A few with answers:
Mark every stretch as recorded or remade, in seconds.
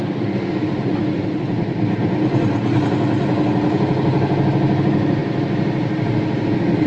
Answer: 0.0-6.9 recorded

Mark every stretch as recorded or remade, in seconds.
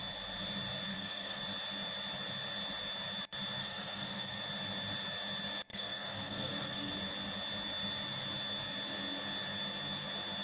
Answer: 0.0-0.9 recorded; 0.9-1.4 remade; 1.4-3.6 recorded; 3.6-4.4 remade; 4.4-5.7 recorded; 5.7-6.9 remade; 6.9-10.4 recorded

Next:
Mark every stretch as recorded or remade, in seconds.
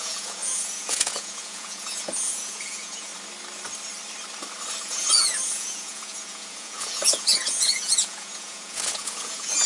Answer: 0.0-3.1 remade; 3.1-4.8 recorded; 4.8-9.7 remade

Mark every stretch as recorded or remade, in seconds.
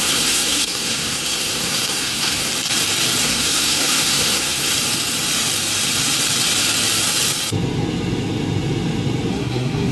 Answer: 0.0-2.5 remade; 2.5-3.2 recorded; 3.2-4.7 remade; 4.7-9.3 recorded; 9.3-9.9 remade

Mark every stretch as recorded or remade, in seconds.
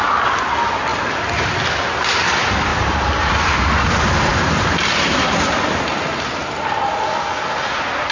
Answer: 0.0-0.9 recorded; 0.9-1.6 remade; 1.6-2.7 recorded; 2.7-3.9 remade; 3.9-4.3 recorded; 4.3-5.9 remade; 5.9-8.1 recorded